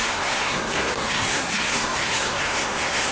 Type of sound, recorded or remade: remade